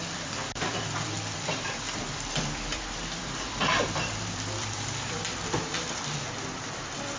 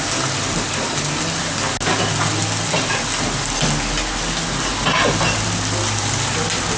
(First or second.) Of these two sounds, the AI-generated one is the first